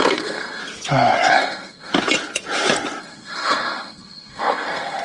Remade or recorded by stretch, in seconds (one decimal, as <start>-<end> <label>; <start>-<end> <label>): 0.0-0.6 remade; 0.6-1.3 recorded; 1.3-1.9 remade; 1.9-3.0 recorded; 3.0-5.0 remade

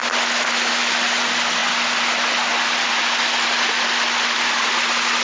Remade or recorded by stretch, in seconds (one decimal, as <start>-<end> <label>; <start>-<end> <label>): 0.0-5.2 recorded

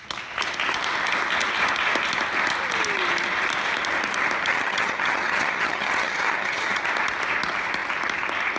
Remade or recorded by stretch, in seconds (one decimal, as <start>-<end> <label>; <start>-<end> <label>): 0.0-4.5 recorded; 4.5-6.8 remade; 6.8-8.6 recorded

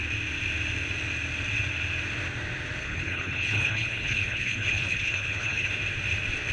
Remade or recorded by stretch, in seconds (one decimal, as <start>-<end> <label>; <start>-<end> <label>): 0.0-2.8 recorded; 2.8-5.7 remade; 5.7-6.5 recorded